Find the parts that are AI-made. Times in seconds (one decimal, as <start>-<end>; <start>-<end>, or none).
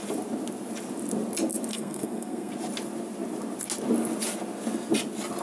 1.7-2.5